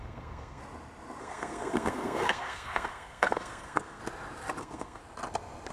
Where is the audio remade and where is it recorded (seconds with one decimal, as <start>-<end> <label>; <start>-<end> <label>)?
0.0-0.6 remade; 0.6-1.2 recorded; 1.2-4.0 remade; 4.0-4.6 recorded; 4.6-5.0 remade; 5.0-5.7 recorded